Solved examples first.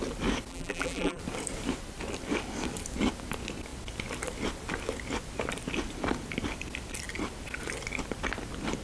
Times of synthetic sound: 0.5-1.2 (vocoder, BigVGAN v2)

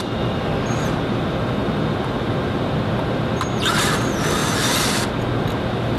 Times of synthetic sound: none

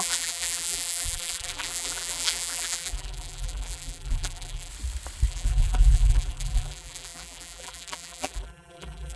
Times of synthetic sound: 0.0-4.7 (vocoder, BigVGAN v2); 5.3-9.2

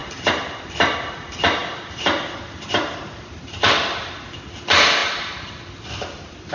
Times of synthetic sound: 0.0-0.6 (vocoder, BigVGAN v2); 1.6-4.1; 5.0-6.5

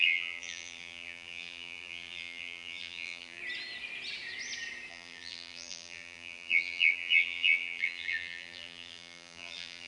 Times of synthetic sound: 0.0-3.4 (vocoder, BigVGAN v2); 4.9-9.9